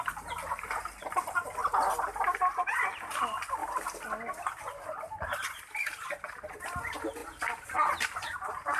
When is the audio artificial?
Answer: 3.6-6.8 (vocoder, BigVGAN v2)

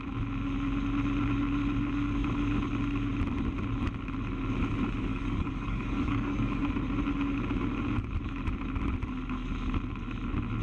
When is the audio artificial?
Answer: 5.1-6.6 (codec, DAC)

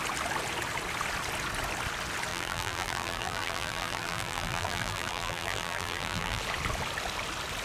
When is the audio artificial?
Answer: 2.3-6.4 (vocoder, BigVGAN v2)

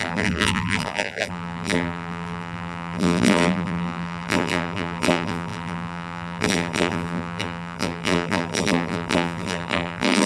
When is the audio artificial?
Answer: 0.0-10.3 (vocoder, BigVGAN v2)

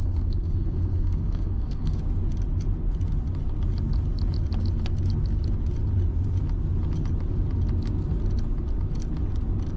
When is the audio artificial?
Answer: 0.0-2.0 (codec, SNAC)

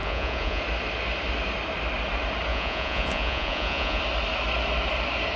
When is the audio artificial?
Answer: 0.0-0.6 (vocoder, Vocos); 2.5-4.0

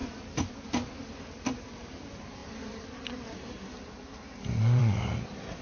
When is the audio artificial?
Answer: none

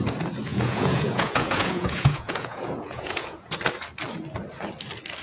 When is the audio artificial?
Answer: 0.5-3.6 (vocoder, Vocos)